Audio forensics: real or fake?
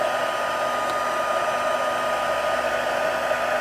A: real